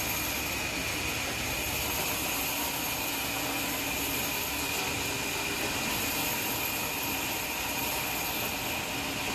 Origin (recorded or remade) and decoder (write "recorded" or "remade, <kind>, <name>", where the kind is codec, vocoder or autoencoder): recorded